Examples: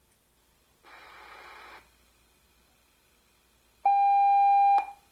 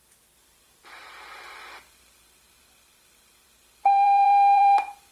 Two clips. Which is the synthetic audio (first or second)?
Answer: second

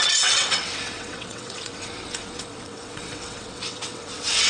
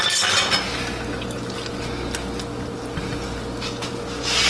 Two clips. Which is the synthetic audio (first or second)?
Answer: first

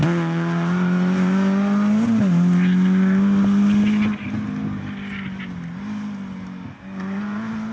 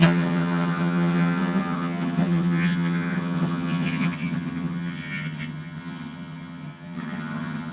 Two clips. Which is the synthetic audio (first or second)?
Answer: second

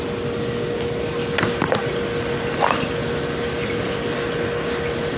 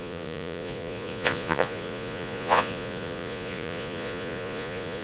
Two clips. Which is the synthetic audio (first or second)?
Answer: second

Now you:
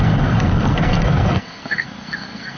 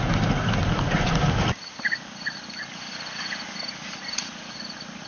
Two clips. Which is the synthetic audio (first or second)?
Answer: first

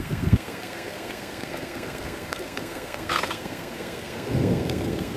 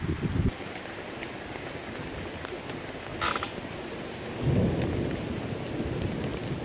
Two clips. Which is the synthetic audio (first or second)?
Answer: first